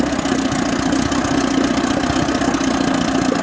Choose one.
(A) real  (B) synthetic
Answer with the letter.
A